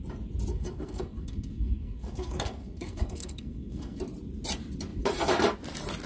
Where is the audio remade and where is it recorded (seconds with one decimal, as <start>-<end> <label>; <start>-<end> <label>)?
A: 0.0-0.5 recorded; 0.5-4.0 remade; 4.0-6.1 recorded